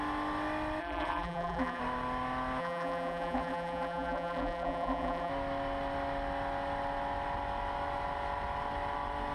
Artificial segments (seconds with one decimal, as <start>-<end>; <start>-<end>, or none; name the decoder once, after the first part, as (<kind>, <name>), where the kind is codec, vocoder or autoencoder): 0.8-1.8 (vocoder, BigVGAN v2); 2.6-5.3

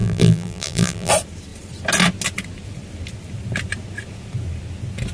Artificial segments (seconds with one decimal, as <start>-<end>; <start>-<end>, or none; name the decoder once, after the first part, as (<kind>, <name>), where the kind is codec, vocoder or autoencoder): 0.0-1.1 (vocoder, BigVGAN v2)